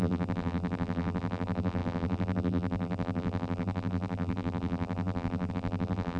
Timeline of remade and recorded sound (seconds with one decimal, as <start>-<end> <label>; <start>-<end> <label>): 0.0-6.2 remade